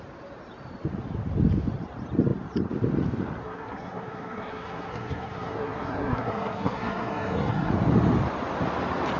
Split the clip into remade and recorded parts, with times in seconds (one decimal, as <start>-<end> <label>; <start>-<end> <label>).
0.0-3.4 recorded; 3.4-7.7 remade; 7.7-9.2 recorded